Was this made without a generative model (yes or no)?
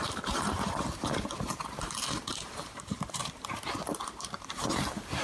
no